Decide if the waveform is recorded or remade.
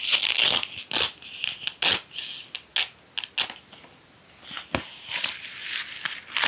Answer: recorded